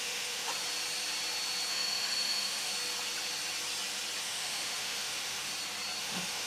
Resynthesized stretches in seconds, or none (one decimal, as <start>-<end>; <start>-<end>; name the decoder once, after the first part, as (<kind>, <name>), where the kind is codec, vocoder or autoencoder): 0.0-0.5 (autoencoder, DAC-VAE); 1.7-2.7; 4.2-5.5; 6.0-6.5